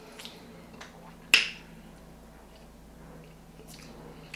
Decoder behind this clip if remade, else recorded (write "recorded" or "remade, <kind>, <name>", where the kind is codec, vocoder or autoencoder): recorded